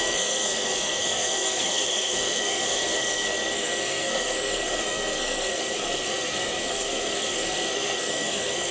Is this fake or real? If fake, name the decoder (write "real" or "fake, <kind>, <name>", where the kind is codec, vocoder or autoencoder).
fake, codec, SNAC